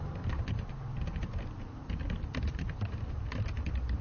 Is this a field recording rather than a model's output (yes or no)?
yes